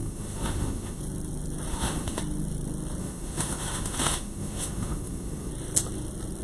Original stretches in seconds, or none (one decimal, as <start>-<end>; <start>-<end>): 1.0-1.7; 2.2-3.0; 5.5-6.4